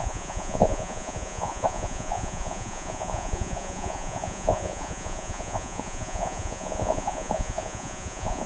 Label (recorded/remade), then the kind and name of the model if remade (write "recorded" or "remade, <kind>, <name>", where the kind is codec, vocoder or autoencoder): remade, vocoder, Vocos